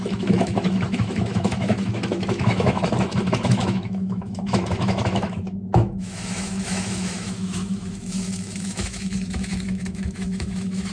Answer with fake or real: fake